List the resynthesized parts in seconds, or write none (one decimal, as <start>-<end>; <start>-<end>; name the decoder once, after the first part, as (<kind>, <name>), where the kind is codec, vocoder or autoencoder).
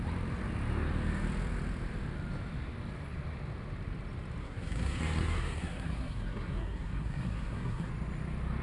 4.4-7.9 (codec, SNAC)